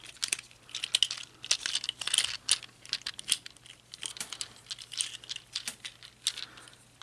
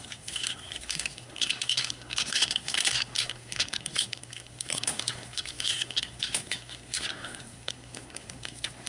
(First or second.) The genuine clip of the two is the first